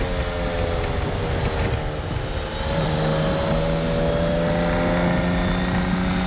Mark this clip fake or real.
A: real